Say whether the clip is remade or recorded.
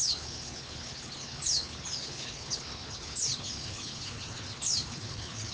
remade